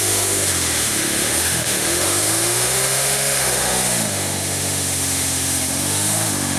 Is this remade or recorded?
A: remade